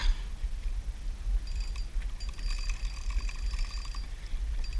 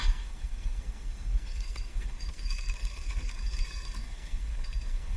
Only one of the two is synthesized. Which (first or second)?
second